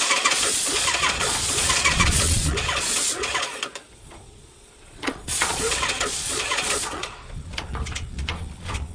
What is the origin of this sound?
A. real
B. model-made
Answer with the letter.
B